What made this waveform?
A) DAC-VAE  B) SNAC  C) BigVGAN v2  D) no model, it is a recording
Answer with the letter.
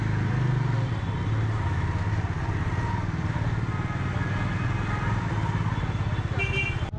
D